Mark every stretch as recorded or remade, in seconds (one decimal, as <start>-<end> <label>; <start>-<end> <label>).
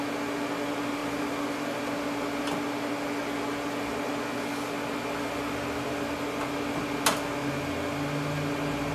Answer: 0.0-1.0 recorded; 1.0-1.8 remade; 1.8-8.9 recorded